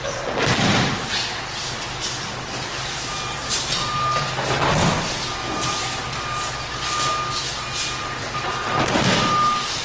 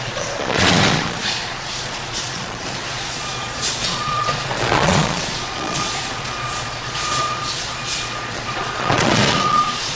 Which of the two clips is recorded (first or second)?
first